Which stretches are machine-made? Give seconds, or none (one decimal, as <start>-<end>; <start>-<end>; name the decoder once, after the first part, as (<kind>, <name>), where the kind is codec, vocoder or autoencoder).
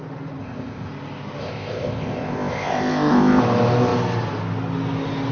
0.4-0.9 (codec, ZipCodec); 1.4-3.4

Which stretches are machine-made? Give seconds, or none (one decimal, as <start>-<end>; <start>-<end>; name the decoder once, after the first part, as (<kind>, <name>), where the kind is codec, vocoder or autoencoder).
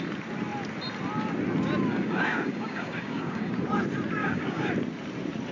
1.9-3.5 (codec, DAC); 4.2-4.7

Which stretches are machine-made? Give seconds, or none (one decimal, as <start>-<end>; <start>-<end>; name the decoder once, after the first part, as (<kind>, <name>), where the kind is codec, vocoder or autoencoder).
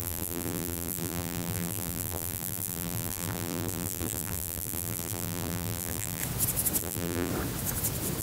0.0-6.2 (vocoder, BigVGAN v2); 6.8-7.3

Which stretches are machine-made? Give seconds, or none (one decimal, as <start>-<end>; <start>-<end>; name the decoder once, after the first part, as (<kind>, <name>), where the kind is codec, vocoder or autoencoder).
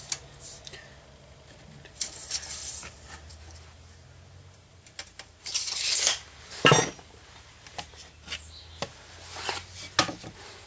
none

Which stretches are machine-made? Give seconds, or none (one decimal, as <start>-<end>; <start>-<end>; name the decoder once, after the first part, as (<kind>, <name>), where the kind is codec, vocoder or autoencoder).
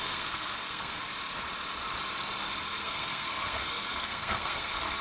0.0-1.1 (codec, SNAC); 2.8-5.0